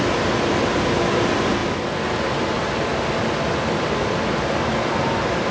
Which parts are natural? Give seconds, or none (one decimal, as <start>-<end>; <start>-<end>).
0.0-5.5